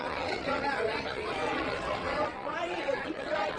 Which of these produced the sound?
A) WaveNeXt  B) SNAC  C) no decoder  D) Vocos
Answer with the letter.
A